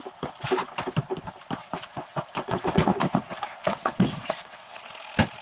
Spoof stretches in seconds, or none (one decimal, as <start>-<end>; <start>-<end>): 1.6-4.8